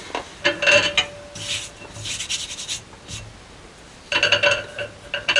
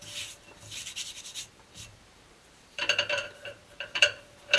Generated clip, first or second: second